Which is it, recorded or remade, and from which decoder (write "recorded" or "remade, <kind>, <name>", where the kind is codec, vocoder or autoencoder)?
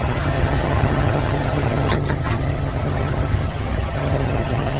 remade, vocoder, HiFi-GAN